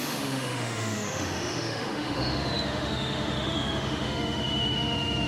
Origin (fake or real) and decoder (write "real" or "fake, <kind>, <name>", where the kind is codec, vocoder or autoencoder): fake, autoencoder, DAC-VAE